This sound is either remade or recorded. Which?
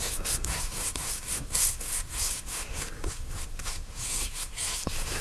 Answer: remade